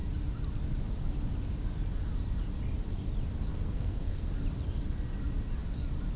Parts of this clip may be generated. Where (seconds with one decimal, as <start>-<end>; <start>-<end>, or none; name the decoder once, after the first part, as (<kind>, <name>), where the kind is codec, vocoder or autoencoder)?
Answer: 3.5-4.3 (codec, SNAC)